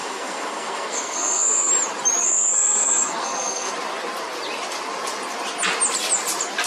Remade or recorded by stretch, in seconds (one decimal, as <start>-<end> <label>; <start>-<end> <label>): 0.0-1.7 remade; 1.7-2.2 recorded; 2.2-3.7 remade; 3.7-6.7 recorded